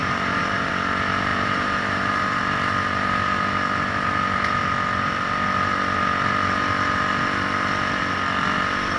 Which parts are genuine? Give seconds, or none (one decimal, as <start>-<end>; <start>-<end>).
0.7-1.3; 2.4-9.0